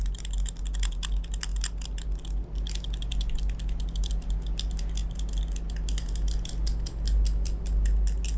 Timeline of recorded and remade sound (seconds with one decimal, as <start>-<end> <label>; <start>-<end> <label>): 0.0-8.4 recorded